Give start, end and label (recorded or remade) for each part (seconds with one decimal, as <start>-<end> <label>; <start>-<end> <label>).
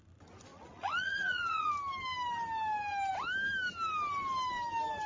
0.0-0.5 recorded; 0.5-1.7 remade; 1.7-5.1 recorded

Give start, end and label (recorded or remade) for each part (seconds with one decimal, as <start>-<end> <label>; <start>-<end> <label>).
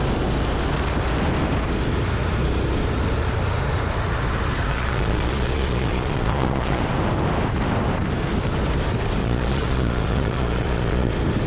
0.0-4.7 recorded; 4.7-6.8 remade; 6.8-9.2 recorded; 9.2-11.1 remade; 11.1-11.5 recorded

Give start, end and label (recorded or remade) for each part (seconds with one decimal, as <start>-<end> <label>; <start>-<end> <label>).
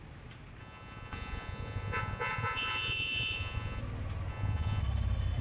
0.0-0.6 recorded; 0.6-3.8 remade; 3.8-4.3 recorded; 4.3-4.8 remade; 4.8-5.4 recorded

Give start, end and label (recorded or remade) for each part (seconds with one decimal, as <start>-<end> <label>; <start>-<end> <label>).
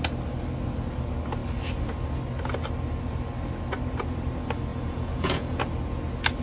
0.0-4.7 recorded; 4.7-5.6 remade; 5.6-6.4 recorded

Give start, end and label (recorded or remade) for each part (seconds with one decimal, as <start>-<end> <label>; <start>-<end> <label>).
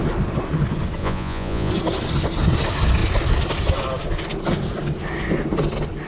0.0-1.0 recorded; 1.0-1.7 remade; 1.7-6.1 recorded